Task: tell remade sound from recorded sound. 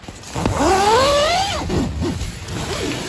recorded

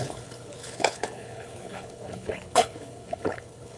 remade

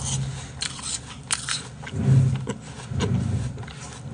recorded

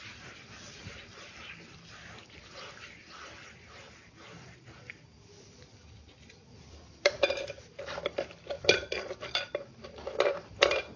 remade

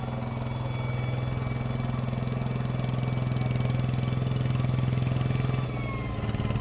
recorded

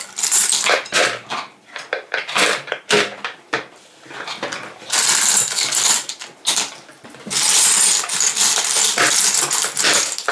remade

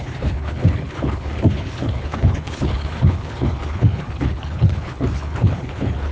remade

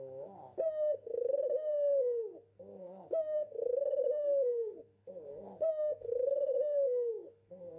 remade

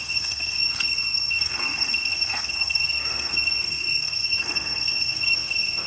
remade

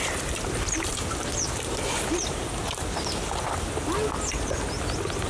recorded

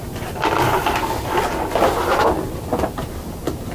recorded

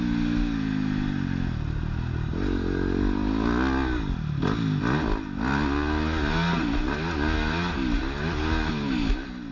recorded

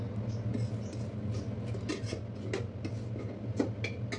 recorded